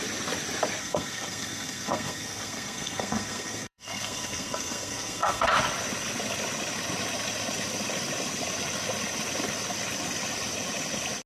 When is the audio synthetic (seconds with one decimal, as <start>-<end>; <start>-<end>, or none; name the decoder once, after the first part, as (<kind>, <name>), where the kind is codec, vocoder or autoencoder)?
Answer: 0.8-5.4 (codec, SNAC)

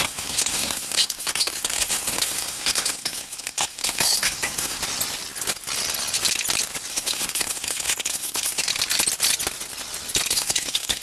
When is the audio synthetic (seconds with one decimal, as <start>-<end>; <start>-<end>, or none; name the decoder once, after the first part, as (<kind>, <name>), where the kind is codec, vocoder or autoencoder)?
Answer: 0.0-4.8 (codec, SNAC); 6.9-8.7; 10.3-11.0

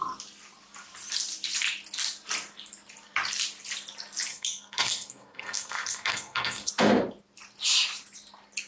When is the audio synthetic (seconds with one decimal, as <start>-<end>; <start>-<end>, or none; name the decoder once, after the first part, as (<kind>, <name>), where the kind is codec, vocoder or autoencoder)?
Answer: 4.3-6.7 (codec, SNAC)

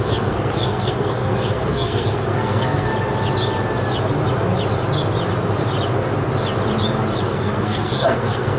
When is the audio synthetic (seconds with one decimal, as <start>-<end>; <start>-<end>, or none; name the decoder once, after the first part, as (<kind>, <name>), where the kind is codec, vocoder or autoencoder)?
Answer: 0.0-2.9 (codec, SNAC); 7.2-8.6